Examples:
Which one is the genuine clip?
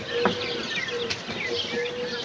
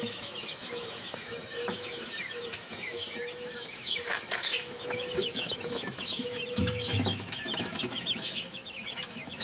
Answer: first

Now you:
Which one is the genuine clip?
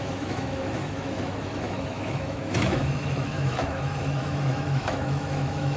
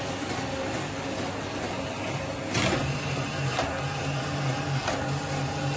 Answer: second